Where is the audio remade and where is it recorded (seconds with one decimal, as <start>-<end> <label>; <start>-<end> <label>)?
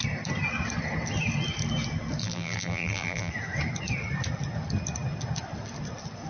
0.0-2.2 recorded; 2.2-3.3 remade; 3.3-6.3 recorded